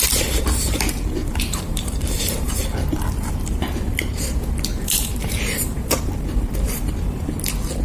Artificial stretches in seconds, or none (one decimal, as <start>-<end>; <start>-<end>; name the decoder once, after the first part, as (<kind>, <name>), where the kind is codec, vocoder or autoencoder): 1.2-2.6 (vocoder, BigVGAN v2); 4.7-6.0